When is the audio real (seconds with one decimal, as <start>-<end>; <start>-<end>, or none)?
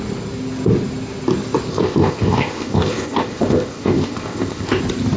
0.0-1.7; 4.8-5.2